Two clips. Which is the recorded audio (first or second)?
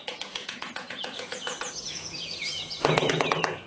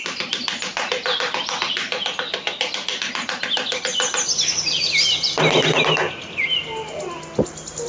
second